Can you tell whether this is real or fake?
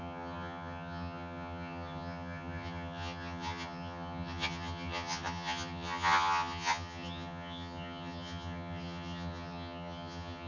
fake